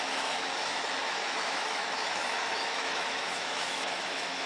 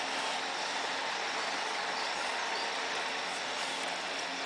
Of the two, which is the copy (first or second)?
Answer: first